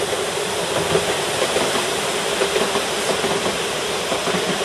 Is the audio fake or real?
real